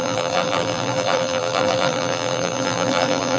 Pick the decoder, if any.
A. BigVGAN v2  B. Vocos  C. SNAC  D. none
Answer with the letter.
A